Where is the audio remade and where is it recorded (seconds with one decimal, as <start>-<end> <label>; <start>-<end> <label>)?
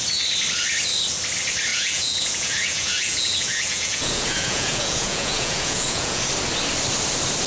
0.0-1.7 recorded; 1.7-6.2 remade; 6.2-7.5 recorded